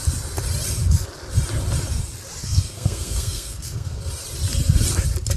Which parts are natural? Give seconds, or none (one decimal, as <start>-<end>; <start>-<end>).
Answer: 0.0-2.4; 4.1-5.4